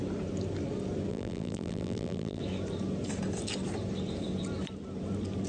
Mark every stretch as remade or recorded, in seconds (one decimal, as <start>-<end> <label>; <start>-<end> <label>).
0.0-1.1 recorded; 1.1-2.4 remade; 2.4-5.5 recorded